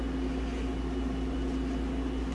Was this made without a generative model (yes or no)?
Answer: yes